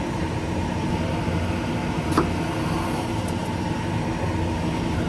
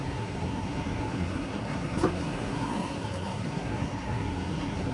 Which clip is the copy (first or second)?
second